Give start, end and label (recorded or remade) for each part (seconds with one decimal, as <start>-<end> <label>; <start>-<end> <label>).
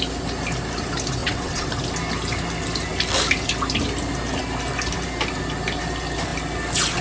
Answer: 0.0-1.2 recorded; 1.2-1.7 remade; 1.7-7.0 recorded